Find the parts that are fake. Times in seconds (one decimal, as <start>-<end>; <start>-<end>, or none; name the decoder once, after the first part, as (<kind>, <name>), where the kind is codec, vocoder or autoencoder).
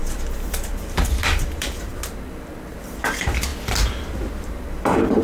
0.0-1.9 (vocoder, BigVGAN v2); 2.7-3.5; 4.3-5.2